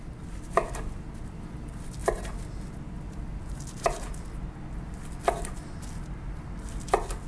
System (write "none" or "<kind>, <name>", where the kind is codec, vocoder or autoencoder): none